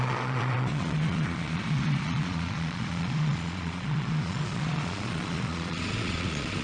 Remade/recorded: remade